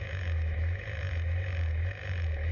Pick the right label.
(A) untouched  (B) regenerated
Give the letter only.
B